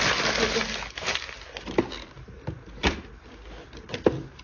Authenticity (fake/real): real